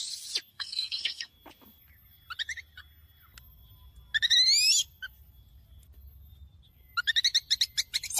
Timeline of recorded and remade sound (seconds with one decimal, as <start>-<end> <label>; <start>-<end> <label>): 0.0-0.5 recorded; 0.5-1.3 remade; 1.3-8.2 recorded